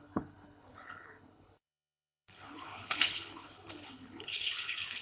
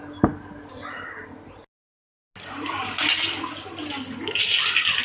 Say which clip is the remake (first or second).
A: first